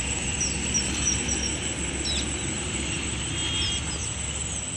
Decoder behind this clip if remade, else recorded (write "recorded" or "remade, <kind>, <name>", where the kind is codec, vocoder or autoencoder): recorded